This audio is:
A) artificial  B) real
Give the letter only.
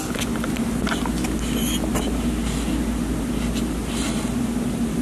B